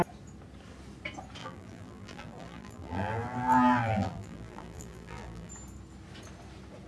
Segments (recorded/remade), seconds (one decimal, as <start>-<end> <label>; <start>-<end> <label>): 0.0-1.4 recorded; 1.4-5.5 remade; 5.5-6.9 recorded